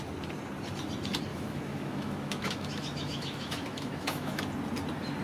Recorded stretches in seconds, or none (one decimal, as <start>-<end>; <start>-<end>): 0.0-1.3; 4.4-5.2